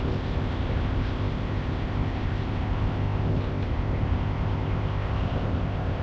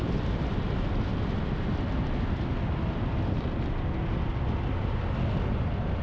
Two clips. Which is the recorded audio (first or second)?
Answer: second